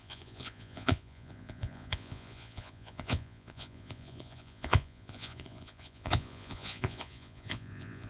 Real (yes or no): no